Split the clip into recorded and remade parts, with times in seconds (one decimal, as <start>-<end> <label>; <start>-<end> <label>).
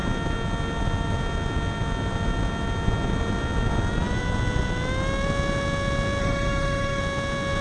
0.0-6.2 recorded; 6.2-7.0 remade; 7.0-7.6 recorded